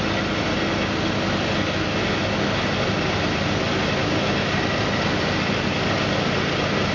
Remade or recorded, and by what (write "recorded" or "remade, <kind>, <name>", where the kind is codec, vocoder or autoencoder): recorded